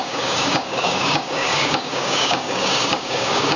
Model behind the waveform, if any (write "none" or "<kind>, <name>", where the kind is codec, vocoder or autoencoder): codec, DAC